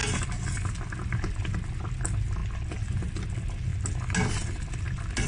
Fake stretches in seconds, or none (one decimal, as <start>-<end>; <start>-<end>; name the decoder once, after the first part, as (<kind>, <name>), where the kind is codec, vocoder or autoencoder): none